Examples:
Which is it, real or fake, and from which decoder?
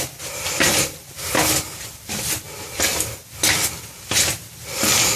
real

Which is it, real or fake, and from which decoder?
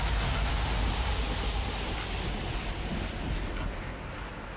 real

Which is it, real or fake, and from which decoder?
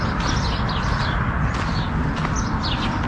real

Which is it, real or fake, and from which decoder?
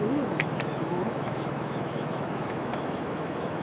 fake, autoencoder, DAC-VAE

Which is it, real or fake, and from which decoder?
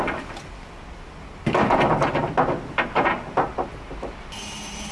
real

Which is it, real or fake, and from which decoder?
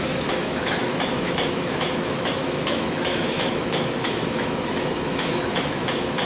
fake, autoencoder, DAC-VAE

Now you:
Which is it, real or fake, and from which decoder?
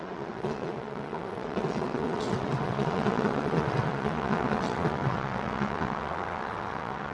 fake, vocoder, WaveNeXt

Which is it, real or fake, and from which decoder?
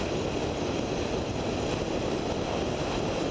real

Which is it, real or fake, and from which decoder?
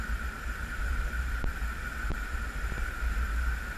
fake, vocoder, BigVGAN v2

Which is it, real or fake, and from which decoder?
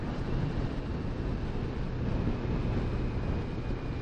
real